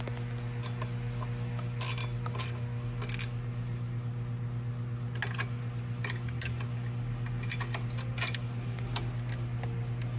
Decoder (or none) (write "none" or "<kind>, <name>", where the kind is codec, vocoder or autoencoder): none